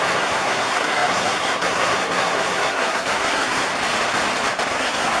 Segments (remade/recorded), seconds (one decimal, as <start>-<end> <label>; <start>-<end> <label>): 0.0-3.7 remade; 3.7-4.7 recorded; 4.7-5.2 remade